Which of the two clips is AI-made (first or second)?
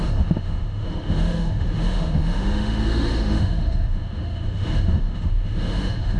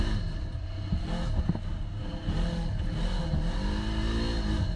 first